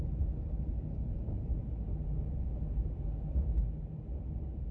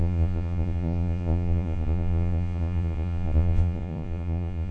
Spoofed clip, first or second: second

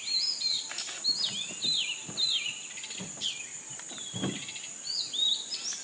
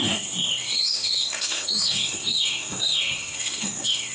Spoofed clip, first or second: second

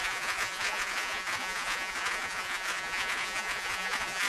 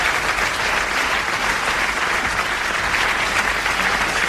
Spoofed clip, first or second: first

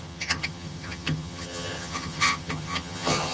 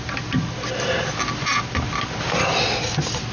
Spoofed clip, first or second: first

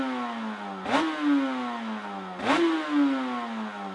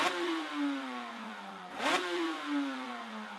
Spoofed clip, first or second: second